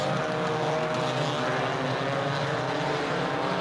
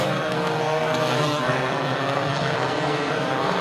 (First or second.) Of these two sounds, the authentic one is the first